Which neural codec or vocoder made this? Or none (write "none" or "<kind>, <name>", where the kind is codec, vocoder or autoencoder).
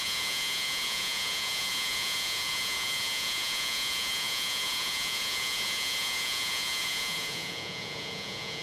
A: vocoder, Vocos